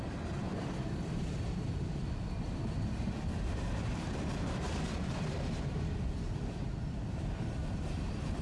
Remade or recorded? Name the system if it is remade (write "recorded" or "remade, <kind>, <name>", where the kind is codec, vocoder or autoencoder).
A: remade, vocoder, BigVGAN v2